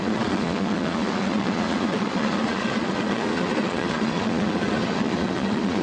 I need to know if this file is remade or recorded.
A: remade